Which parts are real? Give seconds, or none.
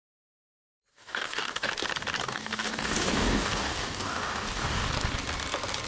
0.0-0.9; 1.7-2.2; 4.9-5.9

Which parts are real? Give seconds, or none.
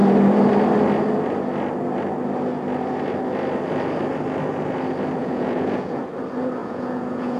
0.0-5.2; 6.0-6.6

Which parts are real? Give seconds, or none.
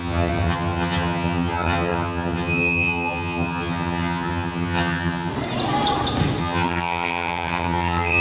5.3-6.4